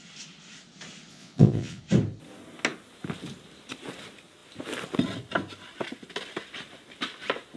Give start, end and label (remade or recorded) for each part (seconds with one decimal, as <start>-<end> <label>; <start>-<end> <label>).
0.0-1.1 recorded; 1.1-1.8 remade; 1.8-7.6 recorded